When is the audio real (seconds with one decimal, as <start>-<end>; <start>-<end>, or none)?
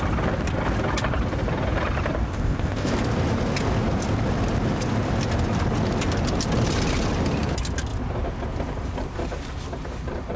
0.0-2.3; 2.9-10.4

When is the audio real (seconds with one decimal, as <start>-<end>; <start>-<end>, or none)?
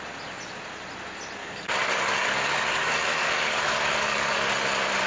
0.0-1.4; 4.5-5.1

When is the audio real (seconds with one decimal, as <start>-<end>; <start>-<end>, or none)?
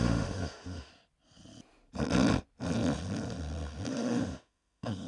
0.9-3.9